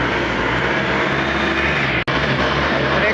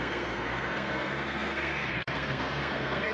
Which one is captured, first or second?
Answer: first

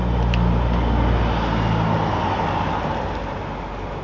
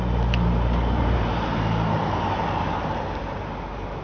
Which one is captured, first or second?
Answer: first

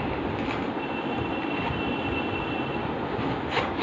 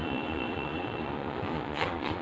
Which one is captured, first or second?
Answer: first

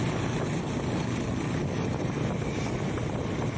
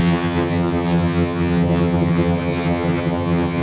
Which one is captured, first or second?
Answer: first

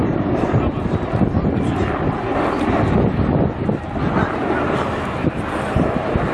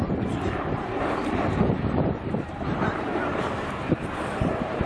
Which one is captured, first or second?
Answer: first